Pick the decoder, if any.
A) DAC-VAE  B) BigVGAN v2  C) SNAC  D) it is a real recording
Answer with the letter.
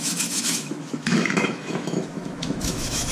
A